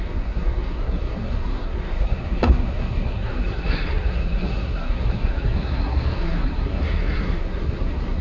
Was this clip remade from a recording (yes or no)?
yes